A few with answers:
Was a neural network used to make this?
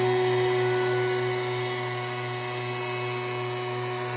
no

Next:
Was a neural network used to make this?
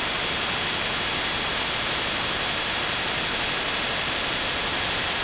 no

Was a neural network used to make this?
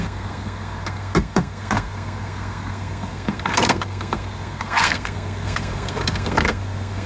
yes